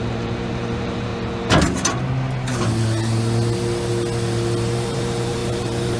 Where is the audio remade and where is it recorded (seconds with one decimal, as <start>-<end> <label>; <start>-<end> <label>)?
0.0-1.1 remade; 1.1-4.7 recorded; 4.7-6.0 remade

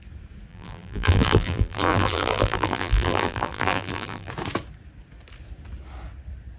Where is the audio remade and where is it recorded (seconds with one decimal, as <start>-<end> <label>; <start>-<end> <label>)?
0.0-0.5 recorded; 0.5-4.3 remade; 4.3-6.6 recorded

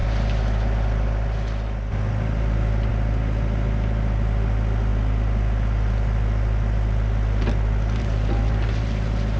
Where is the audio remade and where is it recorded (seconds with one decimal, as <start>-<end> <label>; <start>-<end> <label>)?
0.0-9.4 recorded

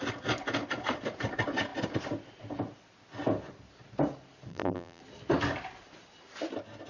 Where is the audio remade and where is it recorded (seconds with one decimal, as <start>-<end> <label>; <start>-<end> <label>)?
0.0-4.5 recorded; 4.5-5.0 remade; 5.0-6.9 recorded

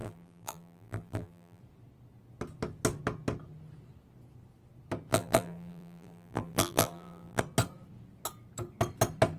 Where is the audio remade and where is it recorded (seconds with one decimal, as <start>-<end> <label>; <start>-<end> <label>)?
0.0-1.6 remade; 1.6-5.1 recorded; 5.1-7.4 remade; 7.4-9.4 recorded

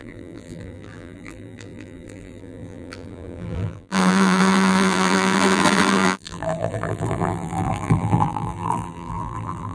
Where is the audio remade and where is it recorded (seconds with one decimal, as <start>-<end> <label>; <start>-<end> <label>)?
0.0-9.7 remade

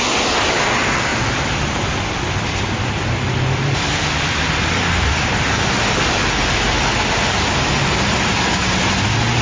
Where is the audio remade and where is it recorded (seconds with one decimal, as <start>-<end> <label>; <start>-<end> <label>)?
0.0-1.1 recorded; 1.1-5.7 remade; 5.7-9.4 recorded

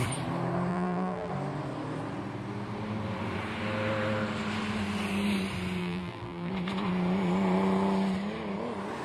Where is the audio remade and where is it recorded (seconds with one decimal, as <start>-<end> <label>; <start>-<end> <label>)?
0.0-0.7 recorded; 0.7-1.3 remade; 1.3-5.8 recorded; 5.8-6.5 remade; 6.5-9.0 recorded